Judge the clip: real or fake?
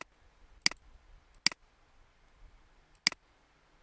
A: real